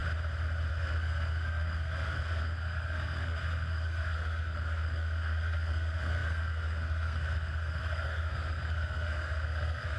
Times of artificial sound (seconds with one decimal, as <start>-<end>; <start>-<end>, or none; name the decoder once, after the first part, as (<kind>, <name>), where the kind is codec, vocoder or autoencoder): 0.7-10.0 (codec, SNAC)